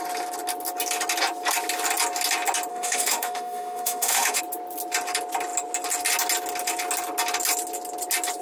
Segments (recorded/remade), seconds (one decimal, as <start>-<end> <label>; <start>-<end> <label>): 0.0-2.7 recorded; 2.7-4.4 remade; 4.4-8.4 recorded